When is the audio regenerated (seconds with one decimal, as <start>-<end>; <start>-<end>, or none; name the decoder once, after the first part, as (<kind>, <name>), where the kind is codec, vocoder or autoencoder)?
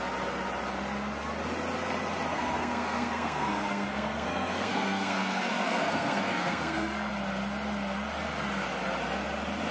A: 2.3-7.1 (codec, SNAC)